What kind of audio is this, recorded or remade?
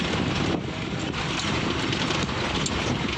recorded